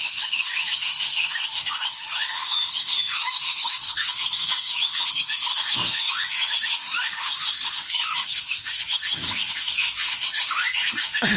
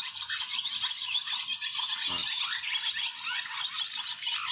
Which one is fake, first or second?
first